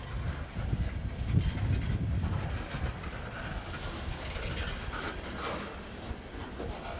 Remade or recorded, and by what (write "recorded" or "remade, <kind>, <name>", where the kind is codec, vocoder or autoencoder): recorded